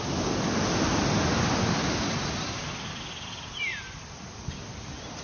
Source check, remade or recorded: recorded